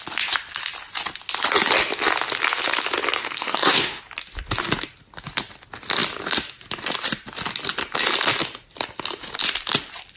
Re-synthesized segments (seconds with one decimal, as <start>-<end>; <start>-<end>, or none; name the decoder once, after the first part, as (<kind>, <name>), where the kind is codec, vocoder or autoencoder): 3.2-4.0 (codec, SNAC)